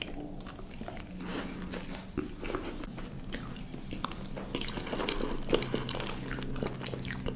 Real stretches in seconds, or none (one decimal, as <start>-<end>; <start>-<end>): 0.0-7.4